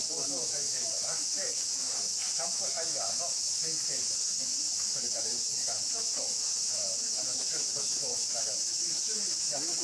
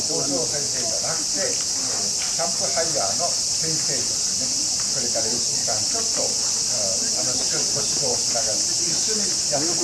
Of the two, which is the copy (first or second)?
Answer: first